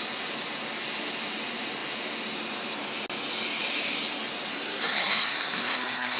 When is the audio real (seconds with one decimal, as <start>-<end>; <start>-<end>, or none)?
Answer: 0.0-4.5